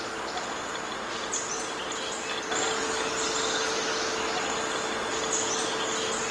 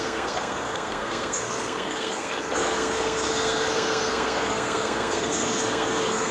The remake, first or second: second